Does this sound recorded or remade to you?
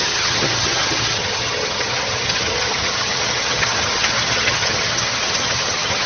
remade